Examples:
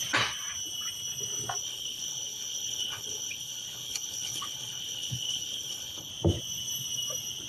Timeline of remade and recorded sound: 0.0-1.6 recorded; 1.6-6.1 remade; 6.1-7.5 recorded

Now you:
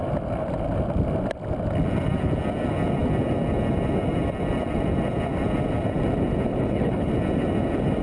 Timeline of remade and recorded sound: 0.0-6.5 recorded; 6.5-7.1 remade; 7.1-8.0 recorded

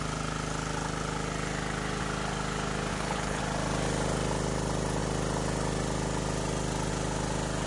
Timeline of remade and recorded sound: 0.0-2.9 recorded; 2.9-3.4 remade; 3.4-7.7 recorded

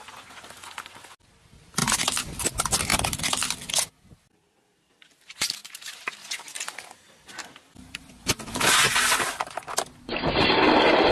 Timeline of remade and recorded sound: 0.0-11.1 recorded

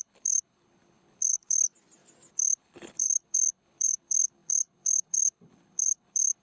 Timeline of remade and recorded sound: 0.0-1.6 remade; 1.6-2.3 recorded; 2.3-6.4 remade

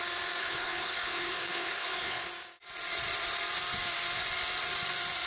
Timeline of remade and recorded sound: 0.0-0.4 recorded; 0.4-2.3 remade; 2.3-5.3 recorded